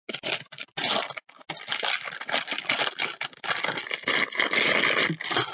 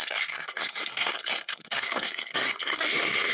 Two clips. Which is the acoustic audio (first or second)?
first